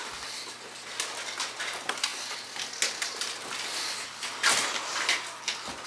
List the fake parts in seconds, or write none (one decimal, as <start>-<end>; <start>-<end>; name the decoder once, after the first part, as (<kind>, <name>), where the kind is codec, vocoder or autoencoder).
none